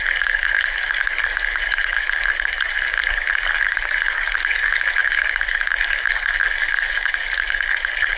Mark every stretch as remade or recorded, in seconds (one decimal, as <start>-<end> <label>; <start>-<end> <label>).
0.0-8.2 remade